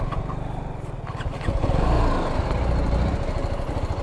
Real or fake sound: real